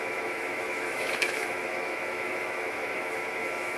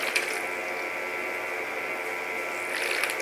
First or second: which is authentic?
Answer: second